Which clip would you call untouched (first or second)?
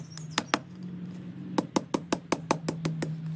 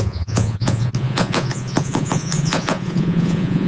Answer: first